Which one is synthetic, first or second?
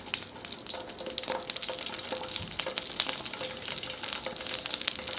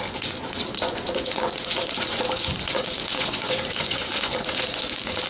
second